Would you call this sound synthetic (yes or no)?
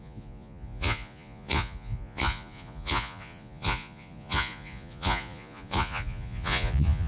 yes